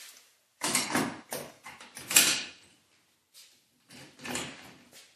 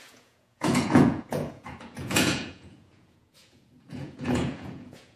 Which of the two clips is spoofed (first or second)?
second